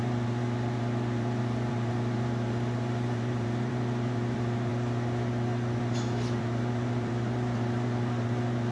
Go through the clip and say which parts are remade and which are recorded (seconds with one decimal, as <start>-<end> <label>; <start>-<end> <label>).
0.0-4.7 remade; 4.7-5.8 recorded; 5.8-8.7 remade